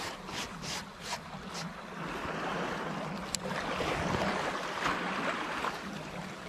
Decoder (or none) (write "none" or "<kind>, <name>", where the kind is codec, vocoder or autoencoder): none